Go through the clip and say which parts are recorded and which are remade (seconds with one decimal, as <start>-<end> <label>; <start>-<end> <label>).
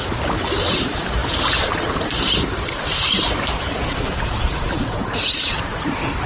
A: 0.0-1.2 remade; 1.2-2.4 recorded; 2.4-6.3 remade